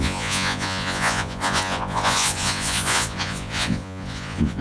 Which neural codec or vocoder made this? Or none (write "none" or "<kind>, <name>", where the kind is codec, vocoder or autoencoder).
vocoder, Vocos